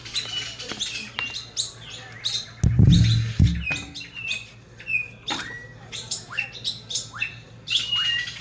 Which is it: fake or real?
real